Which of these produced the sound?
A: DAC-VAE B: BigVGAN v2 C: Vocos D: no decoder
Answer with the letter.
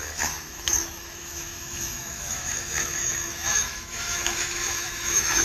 A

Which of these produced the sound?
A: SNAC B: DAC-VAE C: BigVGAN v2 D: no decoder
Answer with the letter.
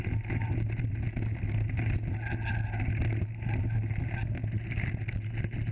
D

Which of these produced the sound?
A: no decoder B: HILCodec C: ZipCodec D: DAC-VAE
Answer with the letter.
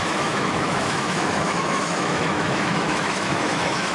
D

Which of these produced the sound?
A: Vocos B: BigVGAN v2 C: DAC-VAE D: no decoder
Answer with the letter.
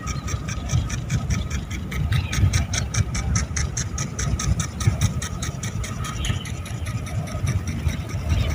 D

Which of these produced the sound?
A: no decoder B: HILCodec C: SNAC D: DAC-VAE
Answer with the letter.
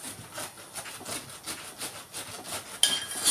A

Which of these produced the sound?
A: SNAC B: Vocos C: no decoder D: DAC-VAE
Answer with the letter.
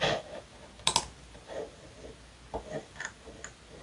C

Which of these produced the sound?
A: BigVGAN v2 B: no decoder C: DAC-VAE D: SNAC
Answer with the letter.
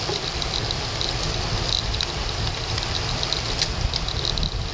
B